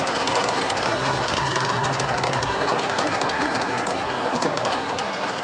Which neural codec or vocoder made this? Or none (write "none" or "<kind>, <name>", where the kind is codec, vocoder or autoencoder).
codec, SNAC